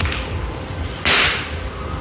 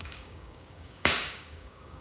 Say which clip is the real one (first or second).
first